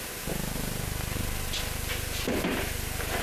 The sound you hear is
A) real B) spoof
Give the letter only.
A